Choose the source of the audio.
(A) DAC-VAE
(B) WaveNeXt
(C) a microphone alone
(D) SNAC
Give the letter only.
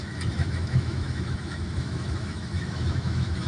A